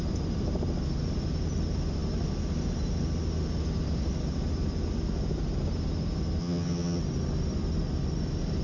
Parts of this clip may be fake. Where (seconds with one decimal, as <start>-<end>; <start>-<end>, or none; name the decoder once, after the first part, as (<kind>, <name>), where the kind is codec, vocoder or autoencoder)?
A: 6.4-7.0 (vocoder, HiFi-GAN)